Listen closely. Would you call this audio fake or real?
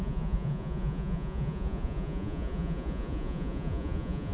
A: fake